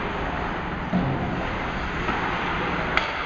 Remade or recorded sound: recorded